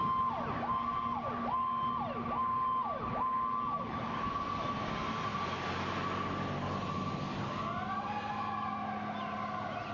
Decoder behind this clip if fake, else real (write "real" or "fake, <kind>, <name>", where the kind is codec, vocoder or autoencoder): real